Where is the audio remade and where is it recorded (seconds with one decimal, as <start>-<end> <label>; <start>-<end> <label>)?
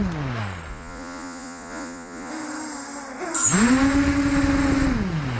0.0-0.7 recorded; 0.7-2.3 remade; 2.3-5.4 recorded